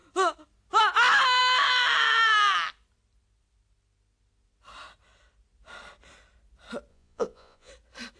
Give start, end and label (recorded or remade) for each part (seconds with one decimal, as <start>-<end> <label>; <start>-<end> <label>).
0.0-6.9 recorded; 6.9-7.7 remade; 7.7-8.2 recorded